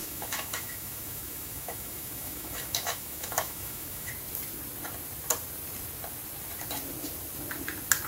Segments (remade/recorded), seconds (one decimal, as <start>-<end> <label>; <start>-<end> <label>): 0.0-4.1 remade; 4.1-8.1 recorded